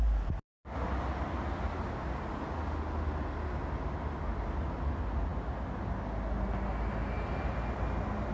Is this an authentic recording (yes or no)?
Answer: yes